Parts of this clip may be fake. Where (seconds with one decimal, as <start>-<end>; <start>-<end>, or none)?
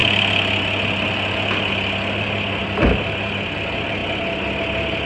none